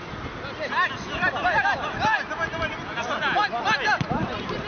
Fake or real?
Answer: real